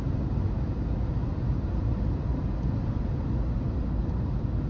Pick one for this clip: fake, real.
real